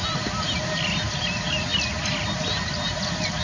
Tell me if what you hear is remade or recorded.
recorded